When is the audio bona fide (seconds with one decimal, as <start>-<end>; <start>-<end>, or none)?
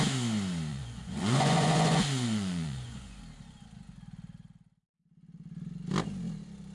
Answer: 0.0-0.7; 3.2-6.7